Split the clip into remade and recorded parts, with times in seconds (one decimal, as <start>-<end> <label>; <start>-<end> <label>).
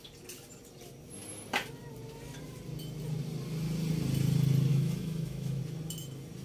0.0-4.7 recorded; 4.7-5.6 remade; 5.6-6.4 recorded